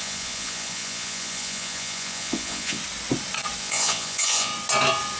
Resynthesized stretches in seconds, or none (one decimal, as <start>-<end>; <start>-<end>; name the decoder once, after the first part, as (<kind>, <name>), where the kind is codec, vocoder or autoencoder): 0.0-2.8 (vocoder, Vocos); 3.6-4.5